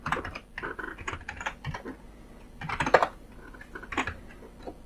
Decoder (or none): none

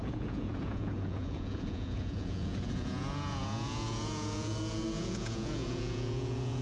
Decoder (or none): vocoder, Vocos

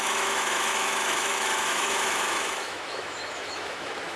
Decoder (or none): autoencoder, DAC-VAE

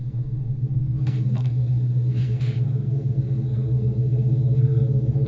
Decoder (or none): codec, SNAC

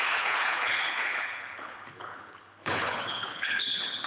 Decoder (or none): codec, HILCodec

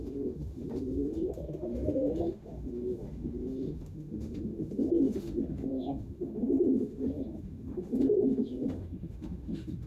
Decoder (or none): autoencoder, DAC-VAE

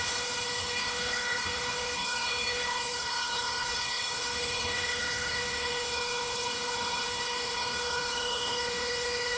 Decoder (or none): codec, HILCodec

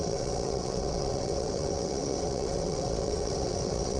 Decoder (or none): vocoder, WaveNeXt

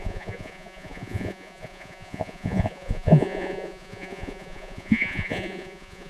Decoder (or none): vocoder, Vocos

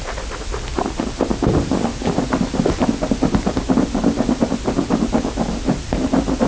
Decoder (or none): none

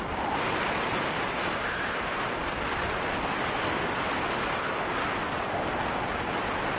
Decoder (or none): none